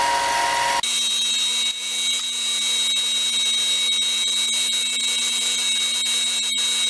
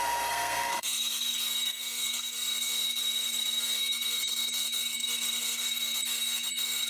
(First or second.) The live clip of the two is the first